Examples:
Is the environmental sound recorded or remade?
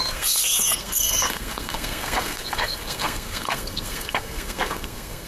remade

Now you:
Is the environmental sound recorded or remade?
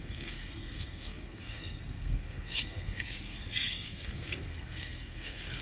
remade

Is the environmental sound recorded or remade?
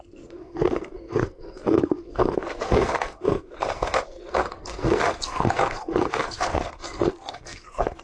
remade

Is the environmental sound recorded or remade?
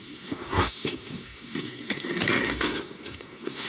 remade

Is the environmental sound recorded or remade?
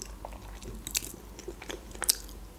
recorded